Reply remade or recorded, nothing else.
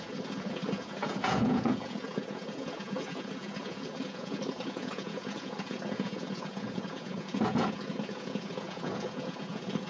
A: remade